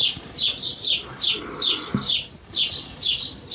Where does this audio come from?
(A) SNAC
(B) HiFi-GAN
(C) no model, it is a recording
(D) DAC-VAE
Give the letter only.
C